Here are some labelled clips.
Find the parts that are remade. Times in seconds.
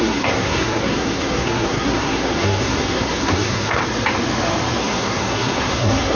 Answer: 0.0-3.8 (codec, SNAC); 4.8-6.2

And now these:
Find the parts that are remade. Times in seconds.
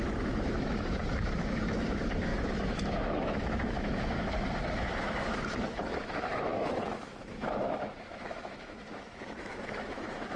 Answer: 0.0-10.4 (autoencoder, DAC-VAE)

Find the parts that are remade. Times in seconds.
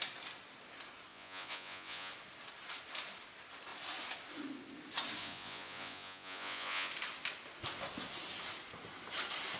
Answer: 1.1-2.1 (vocoder, Vocos); 5.2-6.9